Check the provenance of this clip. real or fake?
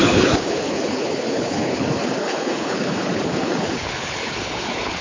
fake